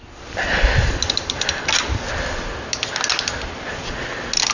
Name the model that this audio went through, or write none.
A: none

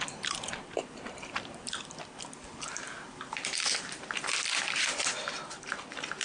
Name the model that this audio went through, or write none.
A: none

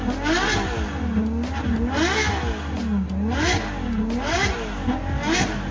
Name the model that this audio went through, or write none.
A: none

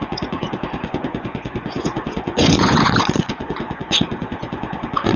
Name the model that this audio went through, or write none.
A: vocoder, Vocos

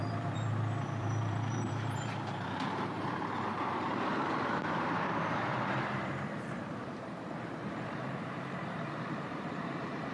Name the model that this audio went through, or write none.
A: vocoder, BigVGAN v2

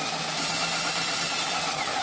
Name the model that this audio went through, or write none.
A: none